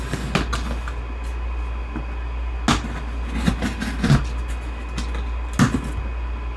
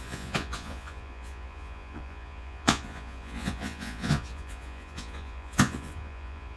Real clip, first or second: first